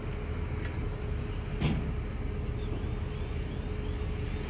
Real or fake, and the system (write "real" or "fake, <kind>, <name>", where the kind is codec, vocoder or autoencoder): real